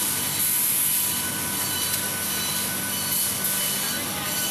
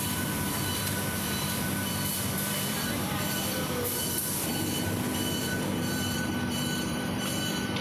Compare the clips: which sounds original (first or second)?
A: first